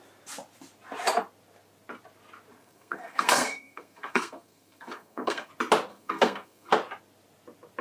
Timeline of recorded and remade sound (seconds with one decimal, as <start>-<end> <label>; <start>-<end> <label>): 0.0-2.6 recorded; 2.6-5.5 remade; 5.5-5.9 recorded; 5.9-6.7 remade; 6.7-7.8 recorded